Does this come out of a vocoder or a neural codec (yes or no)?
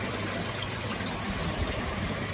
no